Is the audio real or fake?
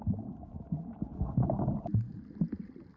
real